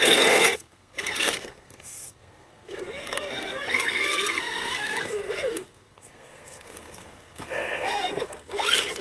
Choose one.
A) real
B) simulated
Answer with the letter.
B